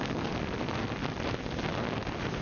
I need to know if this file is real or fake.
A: real